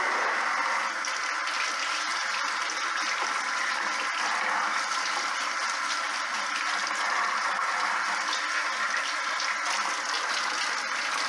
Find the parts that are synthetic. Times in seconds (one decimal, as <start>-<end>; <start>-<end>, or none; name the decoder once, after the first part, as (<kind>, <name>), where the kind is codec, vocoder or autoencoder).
none